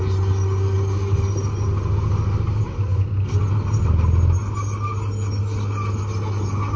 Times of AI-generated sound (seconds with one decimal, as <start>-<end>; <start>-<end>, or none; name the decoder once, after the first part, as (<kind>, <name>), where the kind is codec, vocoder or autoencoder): none